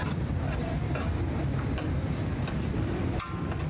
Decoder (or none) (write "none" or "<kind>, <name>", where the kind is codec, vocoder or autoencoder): none